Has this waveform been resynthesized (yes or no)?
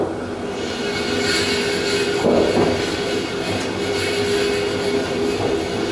no